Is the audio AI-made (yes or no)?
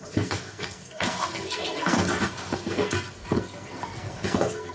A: yes